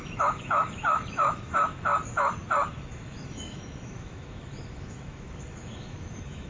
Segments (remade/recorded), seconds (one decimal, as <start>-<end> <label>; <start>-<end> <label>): 0.0-1.9 remade; 1.9-2.7 recorded; 2.7-6.5 remade